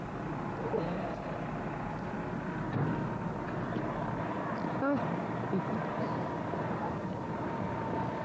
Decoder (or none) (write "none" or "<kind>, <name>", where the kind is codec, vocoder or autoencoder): none